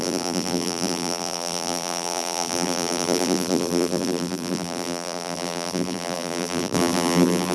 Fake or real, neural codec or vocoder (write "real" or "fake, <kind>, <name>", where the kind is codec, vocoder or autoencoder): fake, vocoder, BigVGAN v2